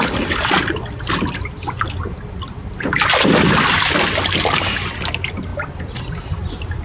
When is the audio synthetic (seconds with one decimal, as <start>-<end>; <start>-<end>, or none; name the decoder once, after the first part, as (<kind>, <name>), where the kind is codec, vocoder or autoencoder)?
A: none